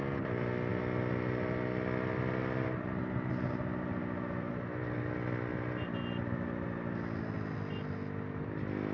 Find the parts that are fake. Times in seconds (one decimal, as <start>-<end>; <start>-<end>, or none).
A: 4.0-4.5